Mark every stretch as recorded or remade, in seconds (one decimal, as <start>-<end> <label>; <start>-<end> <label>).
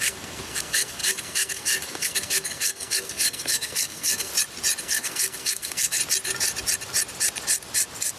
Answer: 0.0-4.3 remade; 4.3-4.8 recorded; 4.8-6.0 remade; 6.0-8.2 recorded